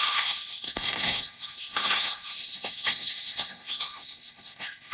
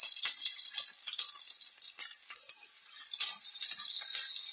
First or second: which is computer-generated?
first